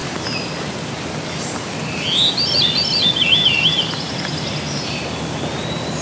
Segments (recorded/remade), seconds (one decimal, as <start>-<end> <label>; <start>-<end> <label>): 0.0-6.0 recorded